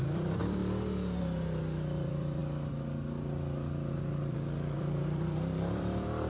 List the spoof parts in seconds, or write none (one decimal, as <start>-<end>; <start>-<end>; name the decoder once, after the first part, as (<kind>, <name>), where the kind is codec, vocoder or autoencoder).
0.0-0.6 (vocoder, BigVGAN v2); 1.2-2.4; 3.9-6.3